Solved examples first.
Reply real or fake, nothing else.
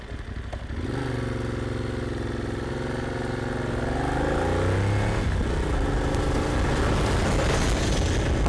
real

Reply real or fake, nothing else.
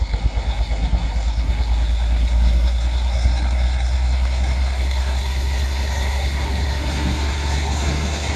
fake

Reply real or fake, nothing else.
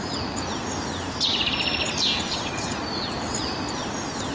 real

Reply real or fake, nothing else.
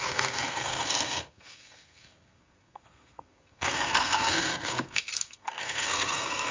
fake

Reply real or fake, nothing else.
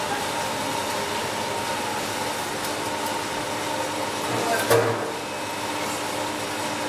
real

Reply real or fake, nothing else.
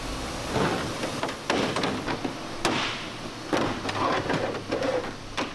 real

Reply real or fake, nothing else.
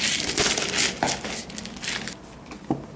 real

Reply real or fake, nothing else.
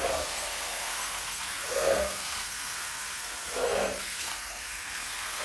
fake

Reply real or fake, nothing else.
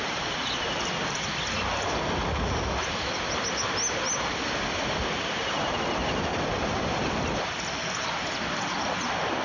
real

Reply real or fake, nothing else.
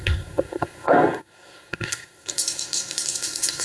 fake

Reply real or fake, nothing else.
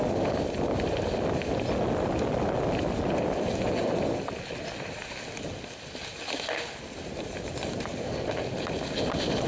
real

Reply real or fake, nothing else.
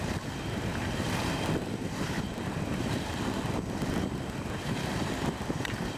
real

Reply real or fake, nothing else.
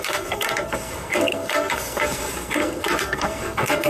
fake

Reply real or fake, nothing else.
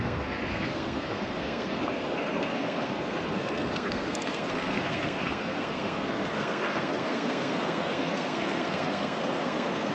fake